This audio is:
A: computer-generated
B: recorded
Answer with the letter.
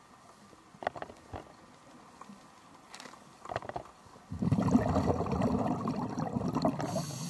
B